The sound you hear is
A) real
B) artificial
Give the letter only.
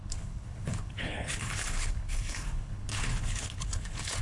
B